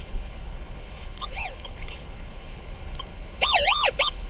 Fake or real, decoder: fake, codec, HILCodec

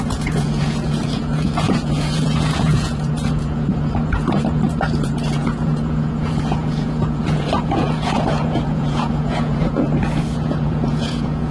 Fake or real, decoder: fake, vocoder, Vocos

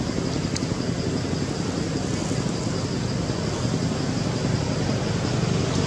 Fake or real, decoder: real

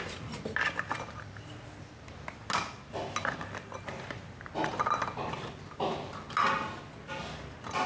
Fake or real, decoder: real